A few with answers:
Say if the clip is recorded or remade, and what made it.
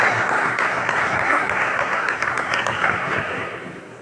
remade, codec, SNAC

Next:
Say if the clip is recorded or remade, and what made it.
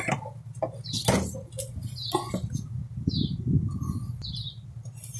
recorded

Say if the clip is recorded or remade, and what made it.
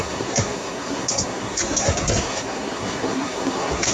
remade, codec, SNAC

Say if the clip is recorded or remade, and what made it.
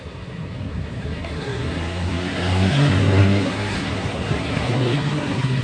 remade, codec, SNAC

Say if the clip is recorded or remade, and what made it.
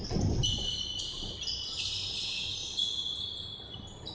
recorded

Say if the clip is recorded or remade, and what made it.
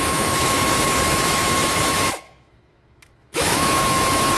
remade, autoencoder, DAC-VAE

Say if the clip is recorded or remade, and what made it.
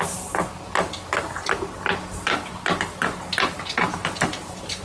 recorded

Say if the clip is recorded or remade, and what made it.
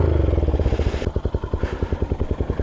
recorded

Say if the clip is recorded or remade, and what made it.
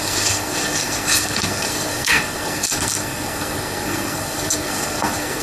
remade, codec, SNAC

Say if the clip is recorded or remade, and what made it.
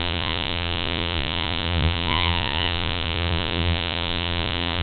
remade, vocoder, Vocos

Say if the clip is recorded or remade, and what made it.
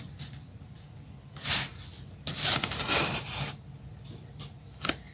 recorded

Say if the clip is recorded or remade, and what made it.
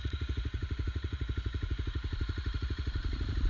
remade, vocoder, Vocos